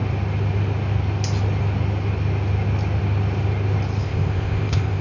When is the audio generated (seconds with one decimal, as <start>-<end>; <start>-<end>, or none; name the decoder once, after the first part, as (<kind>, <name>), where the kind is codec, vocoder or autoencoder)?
4.0-5.0 (codec, ZipCodec)